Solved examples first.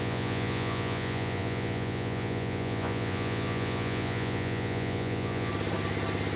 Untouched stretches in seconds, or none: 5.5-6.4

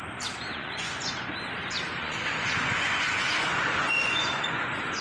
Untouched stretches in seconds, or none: 0.0-0.5; 1.3-1.9